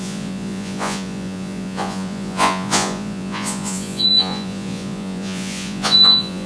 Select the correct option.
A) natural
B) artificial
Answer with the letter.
B